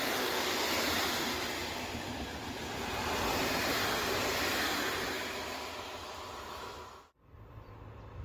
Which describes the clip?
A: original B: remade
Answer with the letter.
A